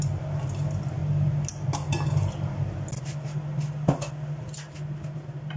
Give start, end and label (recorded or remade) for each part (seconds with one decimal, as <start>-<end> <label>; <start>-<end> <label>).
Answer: 0.0-5.6 recorded